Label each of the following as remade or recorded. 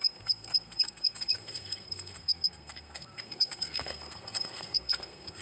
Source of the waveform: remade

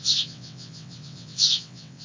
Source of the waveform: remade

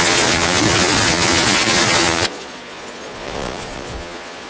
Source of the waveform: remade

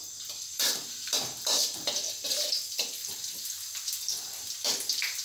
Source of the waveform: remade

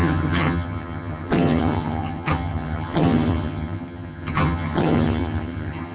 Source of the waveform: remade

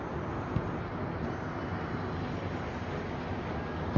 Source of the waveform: recorded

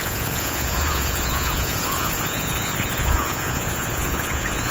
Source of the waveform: remade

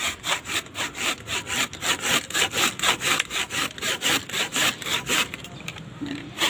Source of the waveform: remade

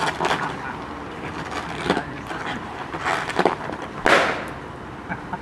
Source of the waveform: recorded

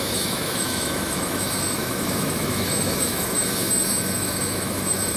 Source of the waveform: remade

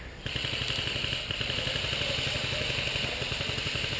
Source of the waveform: recorded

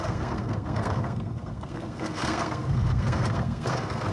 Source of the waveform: remade